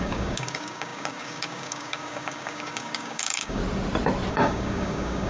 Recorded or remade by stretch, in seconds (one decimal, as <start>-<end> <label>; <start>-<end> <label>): 0.0-3.6 remade; 3.6-4.3 recorded; 4.3-5.3 remade

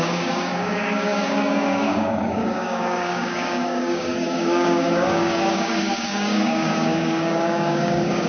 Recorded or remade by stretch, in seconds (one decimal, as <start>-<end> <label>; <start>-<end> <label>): 0.0-8.3 remade

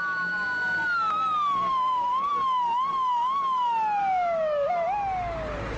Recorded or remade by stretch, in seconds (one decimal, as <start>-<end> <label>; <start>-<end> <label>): 0.0-1.7 recorded; 1.7-2.3 remade; 2.3-4.0 recorded; 4.0-4.7 remade; 4.7-5.8 recorded

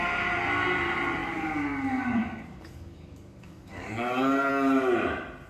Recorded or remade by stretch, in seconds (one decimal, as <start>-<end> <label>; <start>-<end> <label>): 0.0-1.2 recorded; 1.2-4.5 remade; 4.5-5.5 recorded

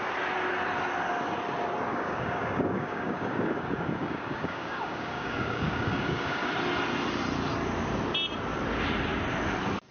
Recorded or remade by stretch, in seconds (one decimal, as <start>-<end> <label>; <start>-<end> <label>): 0.0-1.9 recorded; 1.9-6.5 remade; 6.5-9.9 recorded

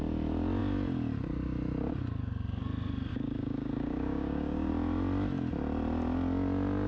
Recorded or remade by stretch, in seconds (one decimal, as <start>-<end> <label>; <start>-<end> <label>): 0.0-3.1 recorded; 3.1-4.7 remade; 4.7-6.9 recorded

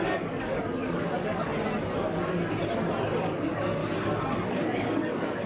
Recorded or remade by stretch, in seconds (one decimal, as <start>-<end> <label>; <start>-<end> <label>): 0.0-1.5 remade; 1.5-3.2 recorded; 3.2-3.8 remade; 3.8-4.5 recorded; 4.5-5.5 remade